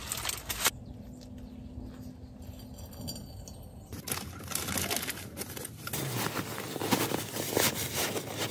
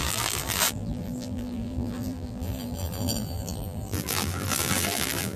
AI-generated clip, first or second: second